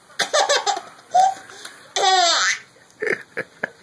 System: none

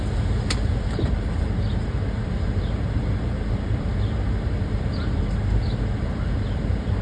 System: vocoder, BigVGAN v2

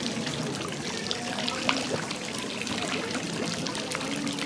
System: none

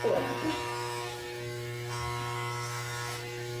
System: autoencoder, DAC-VAE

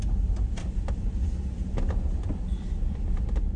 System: none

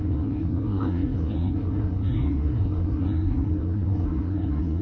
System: codec, SNAC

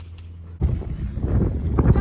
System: none